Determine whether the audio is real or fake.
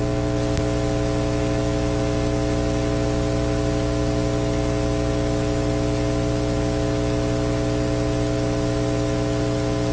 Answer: real